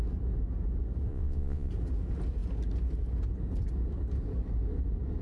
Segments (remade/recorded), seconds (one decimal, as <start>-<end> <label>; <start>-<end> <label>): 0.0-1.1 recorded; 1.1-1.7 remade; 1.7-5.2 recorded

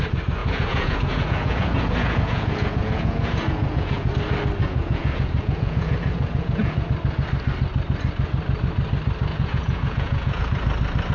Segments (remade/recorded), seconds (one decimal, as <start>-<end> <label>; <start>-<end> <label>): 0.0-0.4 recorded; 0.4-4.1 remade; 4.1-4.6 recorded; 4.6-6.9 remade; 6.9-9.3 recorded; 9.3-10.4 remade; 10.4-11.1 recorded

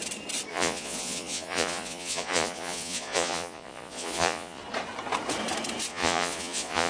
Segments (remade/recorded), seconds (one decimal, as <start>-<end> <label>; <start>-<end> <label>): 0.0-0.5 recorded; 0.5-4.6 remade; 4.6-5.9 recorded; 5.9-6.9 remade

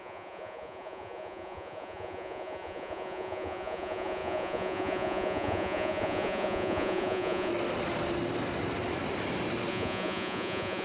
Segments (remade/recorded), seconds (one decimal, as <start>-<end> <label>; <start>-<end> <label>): 0.0-7.5 remade; 7.5-9.7 recorded; 9.7-10.8 remade

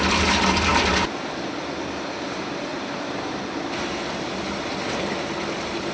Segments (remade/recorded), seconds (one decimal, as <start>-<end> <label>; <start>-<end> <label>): 0.0-5.9 recorded

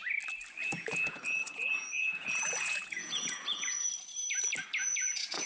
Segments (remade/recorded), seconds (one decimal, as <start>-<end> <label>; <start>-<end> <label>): 0.0-0.6 recorded; 0.6-3.9 remade; 3.9-4.8 recorded; 4.8-5.5 remade

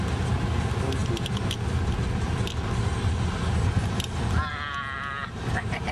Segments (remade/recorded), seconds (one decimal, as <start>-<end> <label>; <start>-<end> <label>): 0.0-5.9 recorded